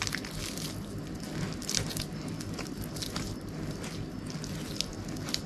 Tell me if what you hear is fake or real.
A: real